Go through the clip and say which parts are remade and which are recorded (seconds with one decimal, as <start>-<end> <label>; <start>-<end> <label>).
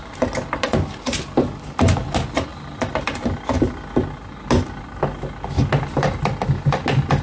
0.0-7.2 recorded